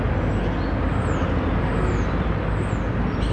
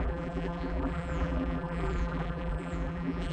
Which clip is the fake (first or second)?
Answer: second